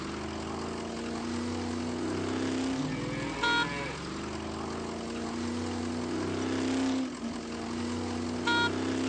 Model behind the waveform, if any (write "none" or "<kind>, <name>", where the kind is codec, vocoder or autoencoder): none